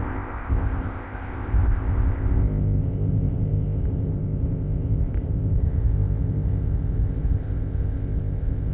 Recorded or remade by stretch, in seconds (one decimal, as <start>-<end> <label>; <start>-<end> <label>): 0.0-8.7 remade